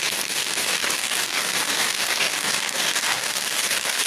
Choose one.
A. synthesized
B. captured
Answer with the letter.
A